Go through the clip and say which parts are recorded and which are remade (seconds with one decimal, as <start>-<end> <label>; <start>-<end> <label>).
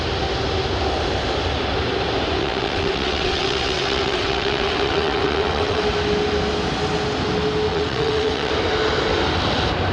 0.0-2.4 recorded; 2.4-5.8 remade; 5.8-7.7 recorded; 7.7-8.5 remade; 8.5-9.9 recorded